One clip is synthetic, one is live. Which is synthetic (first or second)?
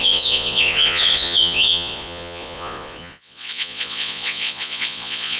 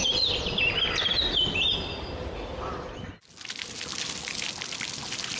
first